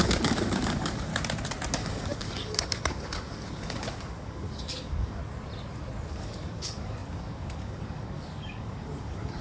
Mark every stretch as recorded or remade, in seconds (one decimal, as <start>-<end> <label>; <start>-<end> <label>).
0.0-1.1 remade; 1.1-1.7 recorded; 1.7-5.2 remade; 5.2-6.1 recorded; 6.1-9.4 remade